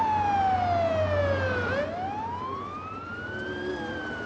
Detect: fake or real real